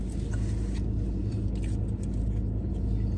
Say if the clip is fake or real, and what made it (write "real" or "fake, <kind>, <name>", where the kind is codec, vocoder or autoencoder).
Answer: real